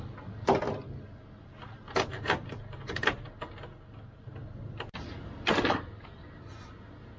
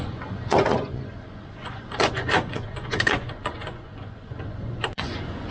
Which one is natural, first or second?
first